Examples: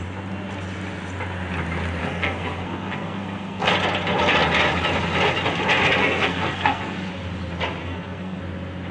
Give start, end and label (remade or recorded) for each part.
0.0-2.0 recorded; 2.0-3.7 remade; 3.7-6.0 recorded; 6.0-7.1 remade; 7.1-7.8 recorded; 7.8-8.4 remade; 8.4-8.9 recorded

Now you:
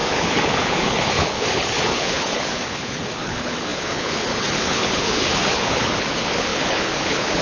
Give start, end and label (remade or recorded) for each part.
0.0-7.4 remade

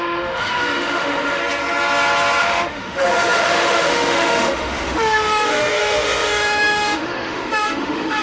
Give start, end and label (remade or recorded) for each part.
0.0-1.4 remade; 1.4-2.4 recorded; 2.4-8.2 remade